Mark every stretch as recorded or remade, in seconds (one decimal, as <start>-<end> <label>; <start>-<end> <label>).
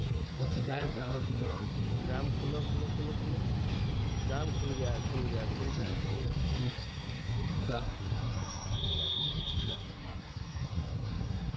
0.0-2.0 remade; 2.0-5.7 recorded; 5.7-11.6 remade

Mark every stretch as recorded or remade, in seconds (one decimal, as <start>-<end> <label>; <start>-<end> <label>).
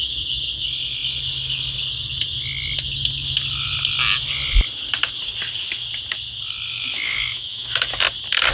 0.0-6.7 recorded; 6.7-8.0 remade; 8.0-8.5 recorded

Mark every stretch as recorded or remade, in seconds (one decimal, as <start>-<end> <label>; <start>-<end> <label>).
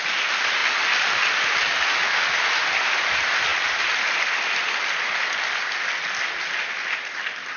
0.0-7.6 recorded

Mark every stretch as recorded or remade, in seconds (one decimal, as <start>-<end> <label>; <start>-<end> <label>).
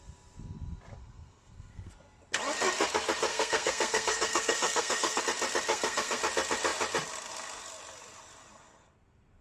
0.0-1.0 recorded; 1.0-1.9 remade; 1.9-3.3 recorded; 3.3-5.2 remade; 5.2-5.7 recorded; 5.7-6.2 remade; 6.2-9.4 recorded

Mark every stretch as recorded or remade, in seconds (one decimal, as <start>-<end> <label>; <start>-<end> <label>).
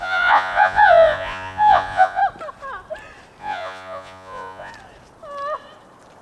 0.0-2.2 remade; 2.2-3.4 recorded; 3.4-4.7 remade; 4.7-6.2 recorded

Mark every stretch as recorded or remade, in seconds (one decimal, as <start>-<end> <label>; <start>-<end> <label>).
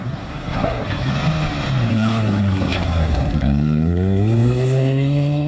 0.0-1.1 remade; 1.1-1.9 recorded; 1.9-5.5 remade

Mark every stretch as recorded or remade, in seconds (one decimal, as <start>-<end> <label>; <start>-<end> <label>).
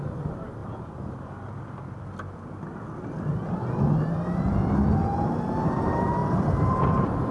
0.0-7.3 recorded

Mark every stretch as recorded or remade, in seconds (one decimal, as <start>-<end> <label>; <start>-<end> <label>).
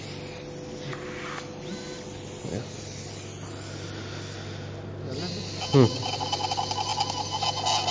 0.0-7.9 recorded